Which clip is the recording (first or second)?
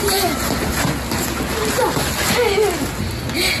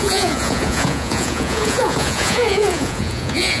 first